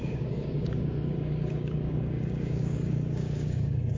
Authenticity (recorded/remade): remade